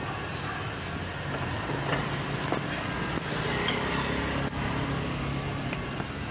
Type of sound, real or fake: real